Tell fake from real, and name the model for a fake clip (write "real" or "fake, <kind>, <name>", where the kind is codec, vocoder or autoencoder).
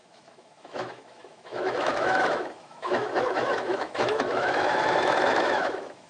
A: fake, autoencoder, DAC-VAE